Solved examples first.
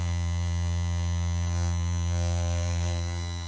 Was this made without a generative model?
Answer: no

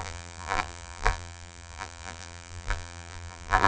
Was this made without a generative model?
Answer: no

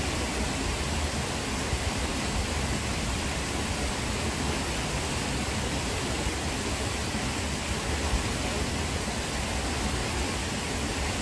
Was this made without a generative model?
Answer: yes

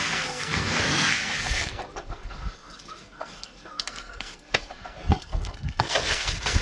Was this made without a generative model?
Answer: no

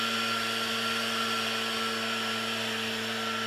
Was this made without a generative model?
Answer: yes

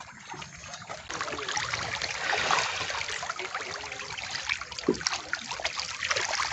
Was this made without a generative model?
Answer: yes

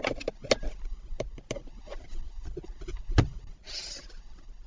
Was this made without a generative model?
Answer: yes